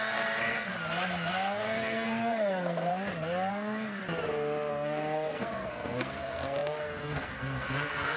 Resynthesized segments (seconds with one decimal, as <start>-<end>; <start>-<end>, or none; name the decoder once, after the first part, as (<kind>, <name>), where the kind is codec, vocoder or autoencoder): 0.0-0.7 (codec, SNAC); 1.3-2.9; 3.5-4.0; 4.7-8.2